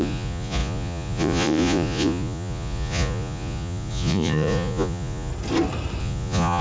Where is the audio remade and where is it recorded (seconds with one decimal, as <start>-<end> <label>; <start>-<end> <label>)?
0.0-5.3 remade; 5.3-6.0 recorded; 6.0-6.6 remade